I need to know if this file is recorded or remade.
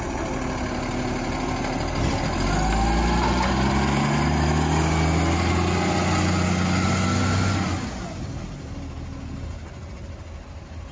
recorded